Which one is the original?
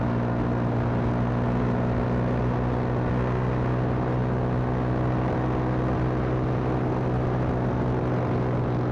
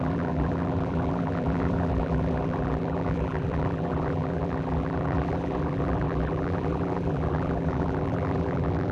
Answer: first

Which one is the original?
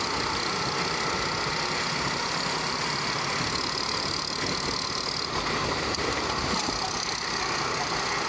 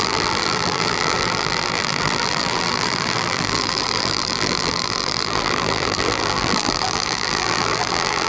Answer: first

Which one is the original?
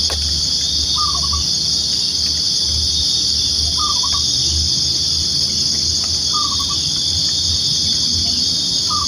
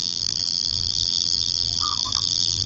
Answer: first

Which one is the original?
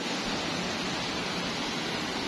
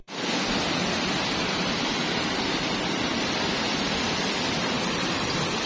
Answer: first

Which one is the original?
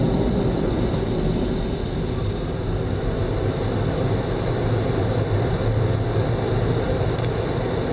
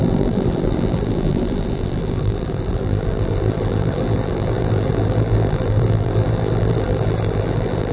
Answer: first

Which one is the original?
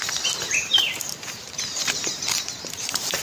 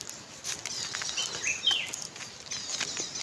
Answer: second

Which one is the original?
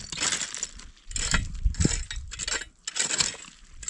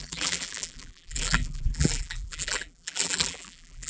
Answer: first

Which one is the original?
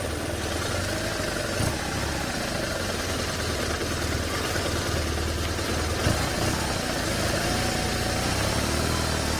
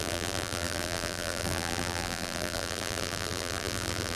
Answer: first